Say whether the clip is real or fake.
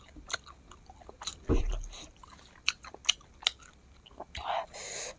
real